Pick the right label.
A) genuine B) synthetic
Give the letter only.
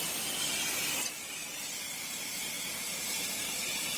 A